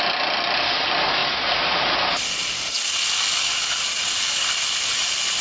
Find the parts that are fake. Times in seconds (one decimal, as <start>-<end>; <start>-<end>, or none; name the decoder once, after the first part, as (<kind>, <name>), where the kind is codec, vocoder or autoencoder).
none